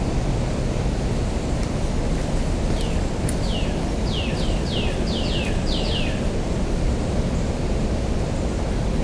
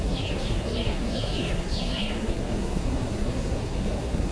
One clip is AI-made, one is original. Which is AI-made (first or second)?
second